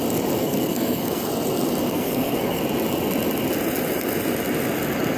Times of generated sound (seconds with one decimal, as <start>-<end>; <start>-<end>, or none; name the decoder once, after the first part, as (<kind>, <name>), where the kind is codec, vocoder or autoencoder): 0.4-1.3 (codec, SNAC); 1.9-2.6